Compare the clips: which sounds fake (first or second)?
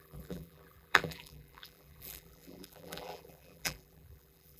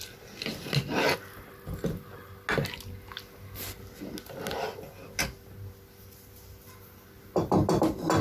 first